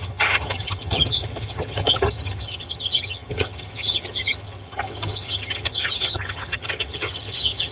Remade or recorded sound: remade